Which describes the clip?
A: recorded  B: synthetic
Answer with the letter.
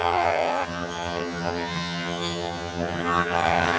B